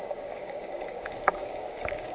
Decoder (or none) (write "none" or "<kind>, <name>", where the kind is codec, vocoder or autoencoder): codec, DAC